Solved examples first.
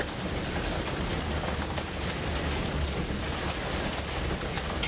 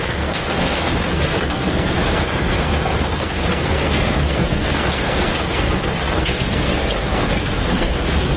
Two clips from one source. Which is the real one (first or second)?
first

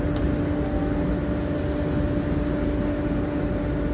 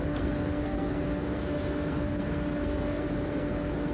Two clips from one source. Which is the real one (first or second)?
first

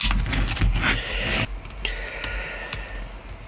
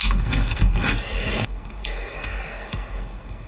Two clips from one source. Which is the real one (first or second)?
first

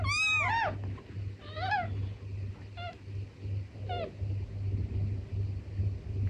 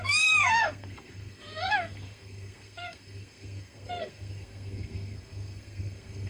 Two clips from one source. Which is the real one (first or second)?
first